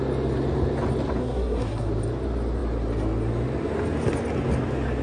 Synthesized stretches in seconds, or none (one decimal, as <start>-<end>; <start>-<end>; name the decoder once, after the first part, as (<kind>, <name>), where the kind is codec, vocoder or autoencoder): 1.2-1.9 (codec, SNAC)